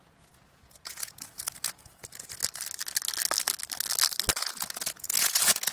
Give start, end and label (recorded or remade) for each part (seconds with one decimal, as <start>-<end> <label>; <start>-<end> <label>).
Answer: 0.0-2.4 remade; 2.4-4.3 recorded; 4.3-5.7 remade